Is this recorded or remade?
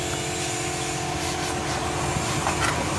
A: recorded